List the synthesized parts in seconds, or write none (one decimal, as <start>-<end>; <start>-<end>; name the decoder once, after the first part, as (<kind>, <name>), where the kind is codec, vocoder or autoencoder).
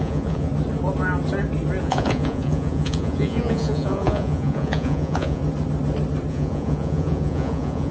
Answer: 0.0-0.5 (vocoder, Vocos); 1.8-5.4; 6.3-7.9